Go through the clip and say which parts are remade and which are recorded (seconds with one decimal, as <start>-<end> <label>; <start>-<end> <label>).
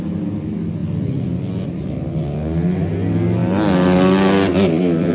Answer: 0.0-0.8 recorded; 0.8-1.5 remade; 1.5-5.1 recorded